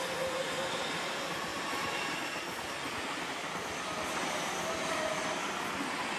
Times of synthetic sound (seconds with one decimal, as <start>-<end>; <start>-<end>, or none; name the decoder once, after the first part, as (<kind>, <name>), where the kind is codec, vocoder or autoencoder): none